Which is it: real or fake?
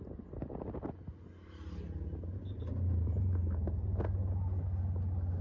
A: real